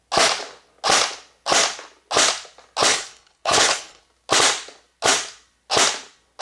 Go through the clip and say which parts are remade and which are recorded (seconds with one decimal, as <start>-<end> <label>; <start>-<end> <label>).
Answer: 0.0-2.9 recorded; 2.9-4.0 remade; 4.0-6.4 recorded